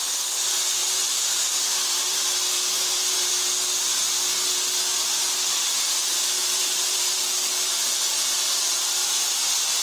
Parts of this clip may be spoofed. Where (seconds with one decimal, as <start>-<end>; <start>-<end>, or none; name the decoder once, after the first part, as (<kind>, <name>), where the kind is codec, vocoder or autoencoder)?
0.8-3.5 (vocoder, BigVGAN v2); 6.4-7.2